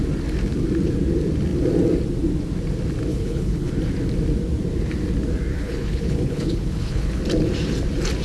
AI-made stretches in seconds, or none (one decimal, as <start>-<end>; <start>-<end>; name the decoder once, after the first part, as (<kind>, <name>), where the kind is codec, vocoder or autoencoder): 3.1-3.7 (codec, HILCodec); 5.5-7.2